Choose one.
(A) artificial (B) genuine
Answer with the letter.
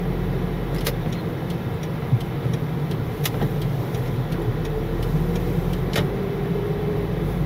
B